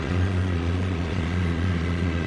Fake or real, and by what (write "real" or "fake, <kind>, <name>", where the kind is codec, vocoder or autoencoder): fake, vocoder, Vocos